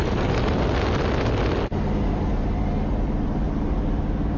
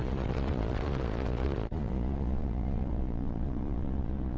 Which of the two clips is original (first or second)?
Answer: first